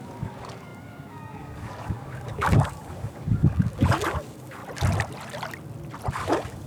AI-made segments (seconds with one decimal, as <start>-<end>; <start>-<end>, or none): 0.0-4.6; 6.1-6.7